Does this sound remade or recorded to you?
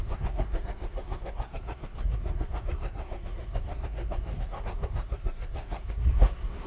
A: remade